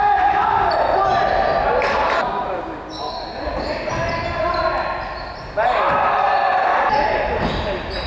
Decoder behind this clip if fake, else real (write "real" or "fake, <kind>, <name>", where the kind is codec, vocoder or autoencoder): real